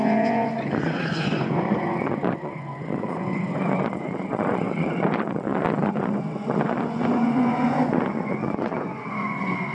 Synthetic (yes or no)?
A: yes